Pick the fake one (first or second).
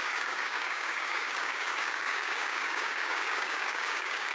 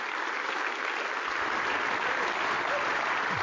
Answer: first